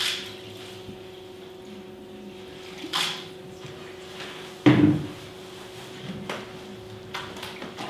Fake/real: real